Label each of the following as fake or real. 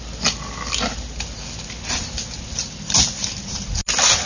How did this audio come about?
real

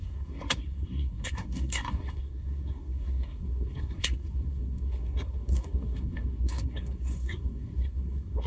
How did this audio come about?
fake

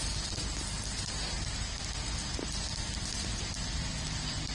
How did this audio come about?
real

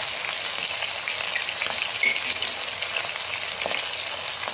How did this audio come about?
real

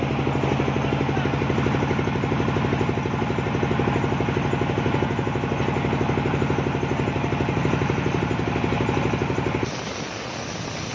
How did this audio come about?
real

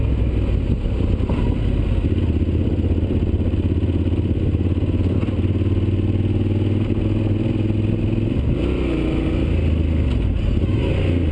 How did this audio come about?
real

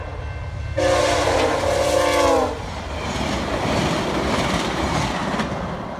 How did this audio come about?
real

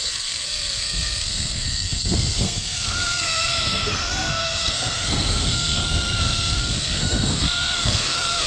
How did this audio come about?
fake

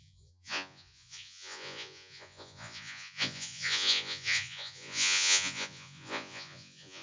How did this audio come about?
fake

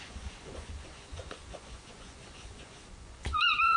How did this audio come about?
fake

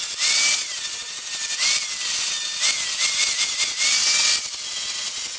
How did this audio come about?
real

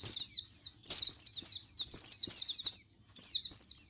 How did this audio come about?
real